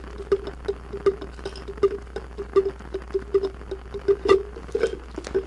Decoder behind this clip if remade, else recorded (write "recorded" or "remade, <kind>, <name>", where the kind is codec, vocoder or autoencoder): recorded